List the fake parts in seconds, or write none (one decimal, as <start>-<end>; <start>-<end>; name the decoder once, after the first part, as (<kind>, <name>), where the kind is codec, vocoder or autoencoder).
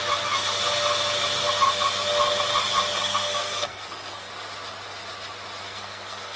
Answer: 3.0-4.3 (codec, SNAC); 5.6-6.4